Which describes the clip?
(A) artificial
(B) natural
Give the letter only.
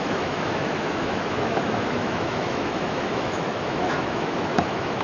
A